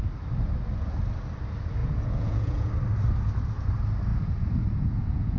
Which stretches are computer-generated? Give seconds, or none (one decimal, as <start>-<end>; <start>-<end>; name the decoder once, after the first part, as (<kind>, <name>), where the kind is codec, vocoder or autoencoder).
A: 1.8-2.7 (vocoder, Vocos); 4.1-5.4